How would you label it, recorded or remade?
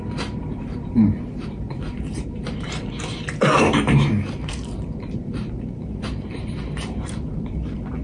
remade